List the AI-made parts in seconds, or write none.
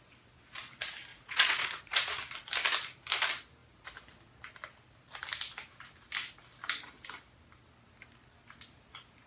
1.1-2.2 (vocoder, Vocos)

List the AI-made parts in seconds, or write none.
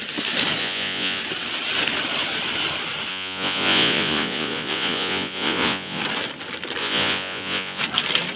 0.6-1.2 (vocoder, Vocos); 3.1-6.0; 6.8-7.8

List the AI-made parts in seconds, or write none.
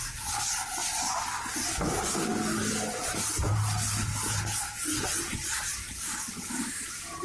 5.8-7.2 (vocoder, BigVGAN v2)